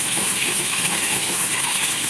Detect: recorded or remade remade